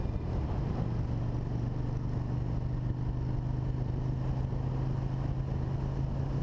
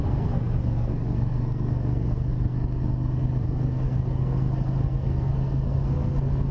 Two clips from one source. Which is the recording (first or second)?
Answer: first